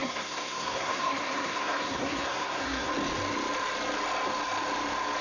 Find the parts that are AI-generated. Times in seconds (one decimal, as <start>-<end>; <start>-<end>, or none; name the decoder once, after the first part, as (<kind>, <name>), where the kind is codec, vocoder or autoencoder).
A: 0.0-2.9 (codec, SNAC)